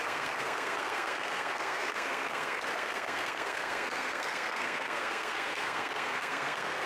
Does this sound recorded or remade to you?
remade